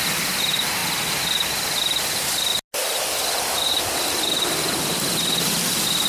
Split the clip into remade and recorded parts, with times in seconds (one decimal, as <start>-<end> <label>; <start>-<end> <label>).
0.0-6.1 recorded